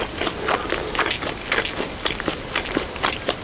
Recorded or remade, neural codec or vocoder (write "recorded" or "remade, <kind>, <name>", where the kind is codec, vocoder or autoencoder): recorded